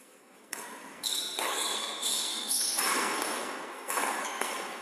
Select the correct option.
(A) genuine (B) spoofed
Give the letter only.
B